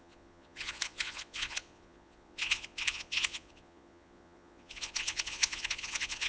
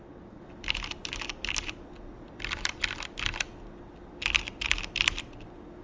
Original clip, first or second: second